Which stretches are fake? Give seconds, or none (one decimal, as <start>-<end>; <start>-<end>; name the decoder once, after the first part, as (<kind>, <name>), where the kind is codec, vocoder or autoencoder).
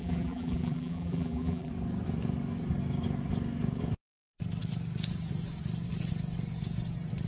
0.0-1.7 (vocoder, BigVGAN v2)